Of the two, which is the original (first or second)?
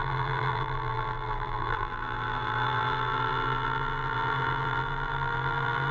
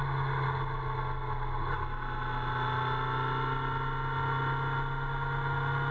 second